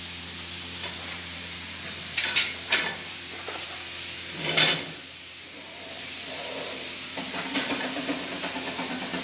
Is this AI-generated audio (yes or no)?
yes